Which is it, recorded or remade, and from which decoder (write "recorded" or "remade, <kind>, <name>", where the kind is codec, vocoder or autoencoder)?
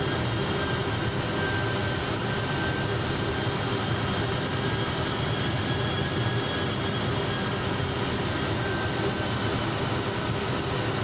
recorded